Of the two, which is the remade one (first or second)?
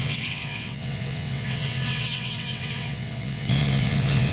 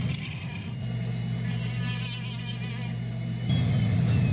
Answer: first